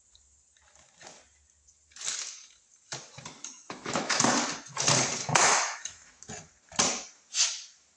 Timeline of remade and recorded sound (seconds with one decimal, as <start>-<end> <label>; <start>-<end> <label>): 0.0-3.4 recorded; 3.4-4.3 remade; 4.3-5.2 recorded; 5.2-6.3 remade; 6.3-8.0 recorded